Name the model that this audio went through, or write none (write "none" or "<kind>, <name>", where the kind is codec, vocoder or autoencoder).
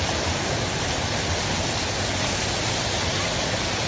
none